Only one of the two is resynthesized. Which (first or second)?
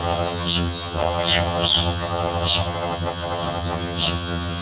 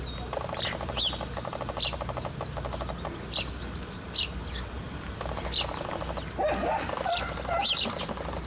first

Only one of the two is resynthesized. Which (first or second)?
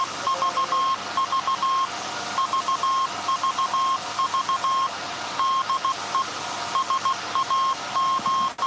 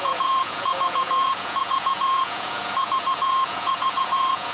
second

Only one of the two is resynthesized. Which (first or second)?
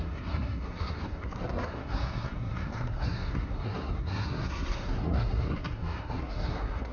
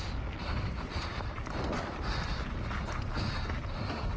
first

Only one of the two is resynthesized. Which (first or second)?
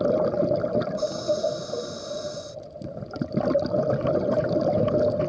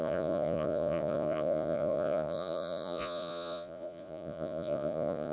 second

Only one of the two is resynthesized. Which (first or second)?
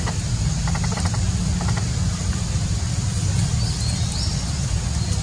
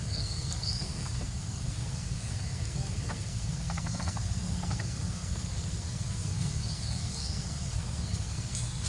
second